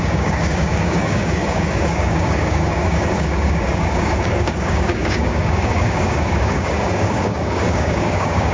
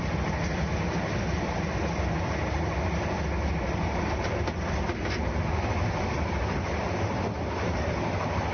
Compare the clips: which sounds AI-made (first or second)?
first